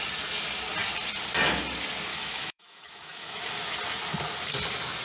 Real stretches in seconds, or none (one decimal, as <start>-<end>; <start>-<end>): 0.0-2.1; 3.4-5.0